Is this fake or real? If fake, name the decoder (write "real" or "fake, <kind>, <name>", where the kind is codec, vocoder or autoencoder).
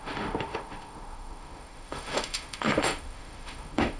fake, autoencoder, DAC-VAE